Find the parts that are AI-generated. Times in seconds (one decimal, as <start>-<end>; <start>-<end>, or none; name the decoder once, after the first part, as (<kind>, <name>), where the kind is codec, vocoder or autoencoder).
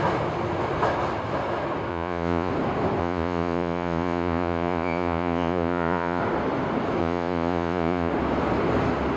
1.9-2.5 (vocoder, Vocos); 3.0-6.2; 7.0-8.1